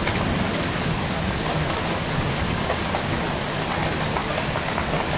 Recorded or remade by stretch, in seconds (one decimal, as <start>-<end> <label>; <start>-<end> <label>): 0.0-0.5 recorded; 0.5-1.5 remade; 1.5-4.2 recorded; 4.2-5.2 remade